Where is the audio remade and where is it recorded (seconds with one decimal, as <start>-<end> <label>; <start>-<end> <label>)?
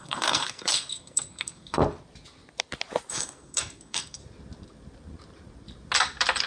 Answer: 0.0-1.8 remade; 1.8-3.1 recorded; 3.1-4.2 remade; 4.2-6.5 recorded